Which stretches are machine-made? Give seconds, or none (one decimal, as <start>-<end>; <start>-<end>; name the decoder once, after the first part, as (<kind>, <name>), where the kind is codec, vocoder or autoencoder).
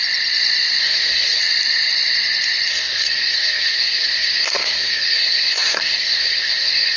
0.8-1.4 (codec, SNAC); 2.7-7.0